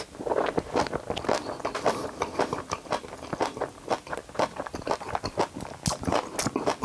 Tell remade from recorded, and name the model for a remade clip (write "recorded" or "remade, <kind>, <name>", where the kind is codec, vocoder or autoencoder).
recorded